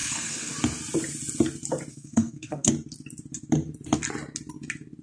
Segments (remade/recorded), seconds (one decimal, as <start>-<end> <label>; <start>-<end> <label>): 0.0-0.5 remade; 0.5-1.9 recorded; 1.9-2.7 remade; 2.7-5.0 recorded